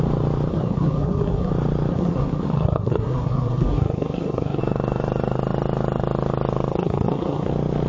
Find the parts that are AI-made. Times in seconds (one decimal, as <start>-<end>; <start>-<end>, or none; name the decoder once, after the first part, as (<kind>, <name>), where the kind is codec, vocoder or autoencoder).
0.5-1.5 (codec, SNAC); 1.9-4.6; 6.7-7.5

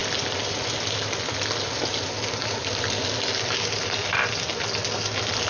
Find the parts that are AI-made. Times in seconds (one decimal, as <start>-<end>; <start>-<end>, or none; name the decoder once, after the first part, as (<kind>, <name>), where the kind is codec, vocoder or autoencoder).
none